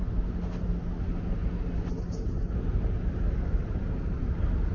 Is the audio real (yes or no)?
yes